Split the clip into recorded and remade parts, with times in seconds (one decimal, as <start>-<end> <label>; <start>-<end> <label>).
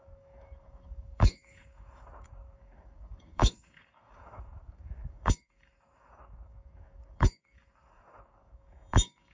0.0-9.3 remade